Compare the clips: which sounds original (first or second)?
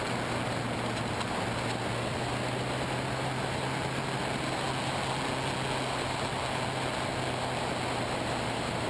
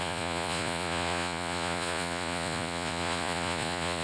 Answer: first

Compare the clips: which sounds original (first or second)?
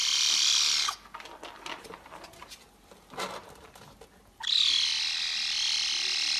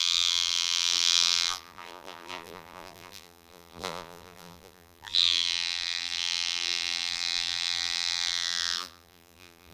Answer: first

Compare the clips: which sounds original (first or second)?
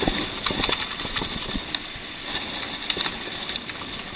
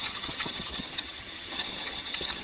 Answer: first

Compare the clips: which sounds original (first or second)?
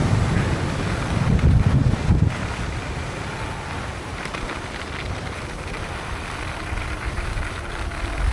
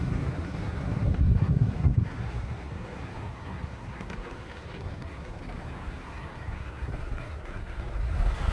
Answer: first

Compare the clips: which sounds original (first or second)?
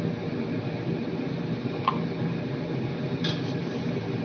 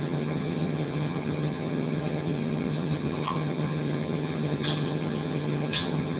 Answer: first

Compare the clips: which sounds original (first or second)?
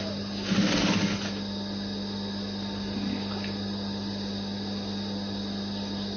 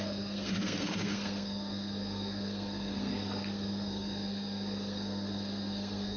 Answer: first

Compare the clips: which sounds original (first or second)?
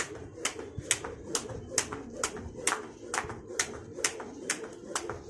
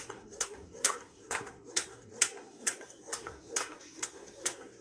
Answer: first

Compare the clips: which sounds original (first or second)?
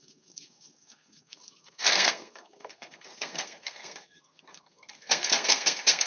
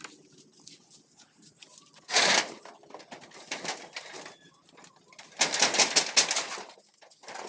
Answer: second